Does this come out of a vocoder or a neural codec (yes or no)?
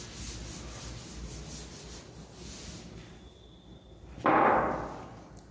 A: no